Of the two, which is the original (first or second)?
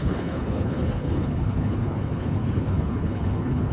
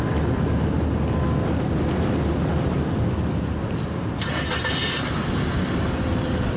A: second